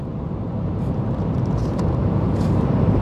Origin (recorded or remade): remade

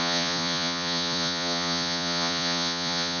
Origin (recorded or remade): remade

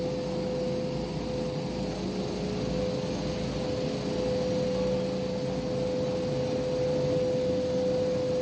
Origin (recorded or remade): recorded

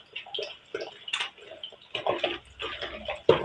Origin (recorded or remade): recorded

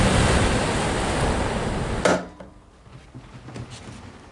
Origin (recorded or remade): recorded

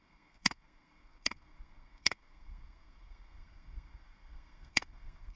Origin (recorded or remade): remade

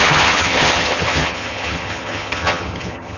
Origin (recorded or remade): remade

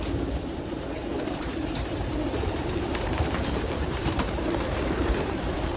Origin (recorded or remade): remade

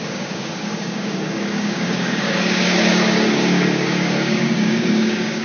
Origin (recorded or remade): remade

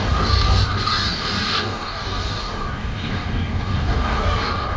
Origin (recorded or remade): remade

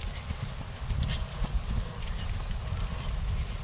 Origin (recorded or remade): recorded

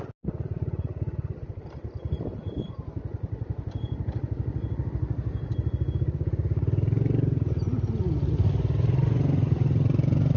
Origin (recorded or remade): recorded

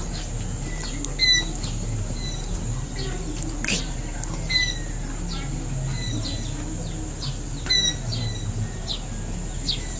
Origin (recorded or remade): recorded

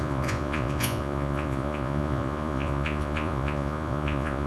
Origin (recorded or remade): remade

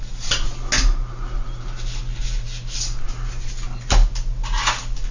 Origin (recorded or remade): recorded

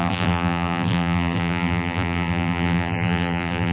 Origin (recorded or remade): remade